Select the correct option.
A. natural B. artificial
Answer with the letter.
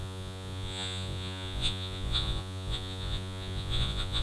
B